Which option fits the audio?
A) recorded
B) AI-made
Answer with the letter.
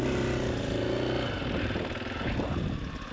A